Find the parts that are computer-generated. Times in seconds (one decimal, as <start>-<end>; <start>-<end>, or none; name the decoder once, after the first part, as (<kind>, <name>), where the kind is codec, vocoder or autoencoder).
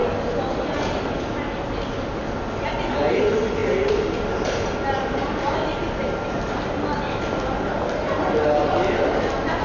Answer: none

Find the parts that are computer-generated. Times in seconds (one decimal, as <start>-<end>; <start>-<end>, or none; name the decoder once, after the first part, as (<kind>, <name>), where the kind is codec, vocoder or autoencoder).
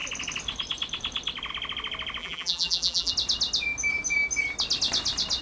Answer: 2.2-3.1 (vocoder, BigVGAN v2)